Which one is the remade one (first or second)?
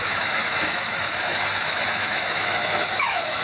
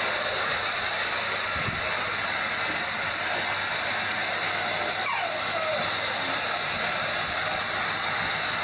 first